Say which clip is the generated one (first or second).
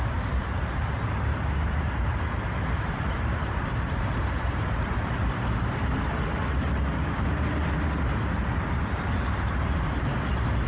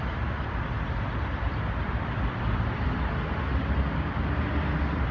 first